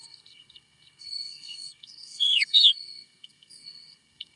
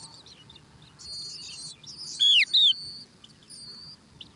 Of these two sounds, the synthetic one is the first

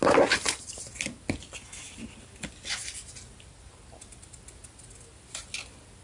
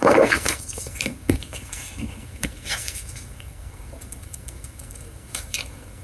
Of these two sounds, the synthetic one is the second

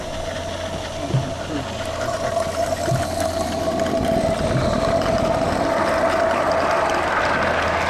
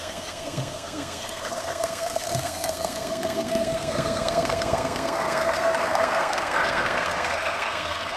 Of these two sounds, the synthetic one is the second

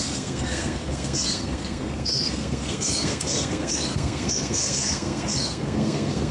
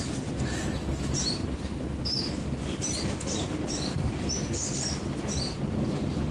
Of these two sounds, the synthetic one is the first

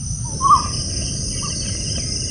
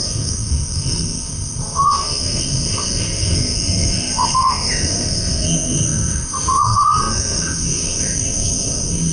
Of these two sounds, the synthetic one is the second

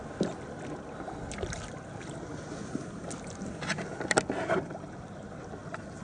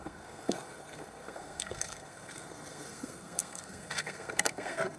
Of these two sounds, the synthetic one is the second